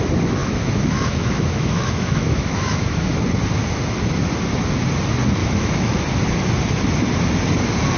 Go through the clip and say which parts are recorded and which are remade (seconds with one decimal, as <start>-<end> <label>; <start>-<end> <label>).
0.0-0.4 recorded; 0.4-3.2 remade; 3.2-5.4 recorded; 5.4-6.0 remade; 6.0-8.0 recorded